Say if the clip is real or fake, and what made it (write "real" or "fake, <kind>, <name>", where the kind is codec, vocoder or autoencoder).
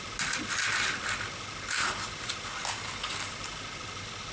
real